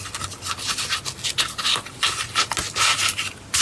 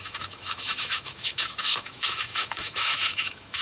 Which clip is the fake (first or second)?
second